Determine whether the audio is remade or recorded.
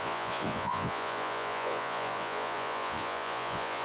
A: remade